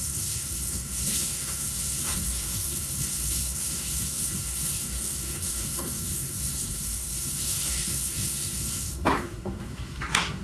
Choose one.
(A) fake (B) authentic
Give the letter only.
A